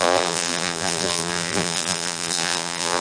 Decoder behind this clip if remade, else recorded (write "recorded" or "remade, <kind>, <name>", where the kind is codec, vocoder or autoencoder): remade, vocoder, BigVGAN v2